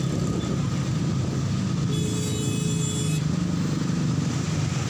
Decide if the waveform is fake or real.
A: real